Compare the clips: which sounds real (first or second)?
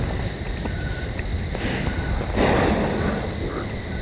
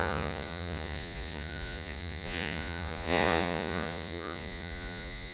first